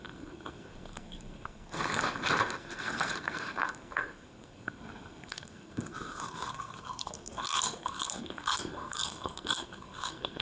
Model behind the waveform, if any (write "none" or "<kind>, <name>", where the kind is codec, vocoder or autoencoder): codec, SNAC